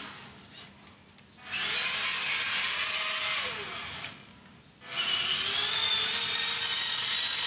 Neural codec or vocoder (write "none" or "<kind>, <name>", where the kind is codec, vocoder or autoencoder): none